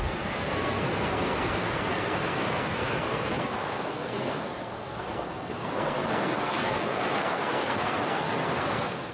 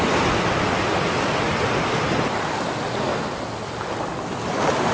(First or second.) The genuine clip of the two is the second